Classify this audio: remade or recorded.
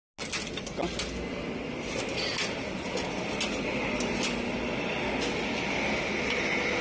recorded